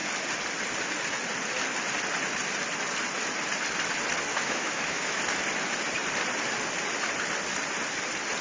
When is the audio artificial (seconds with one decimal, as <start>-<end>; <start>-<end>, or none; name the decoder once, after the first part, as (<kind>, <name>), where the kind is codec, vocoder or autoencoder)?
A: 4.3-5.2 (autoencoder, DAC-VAE)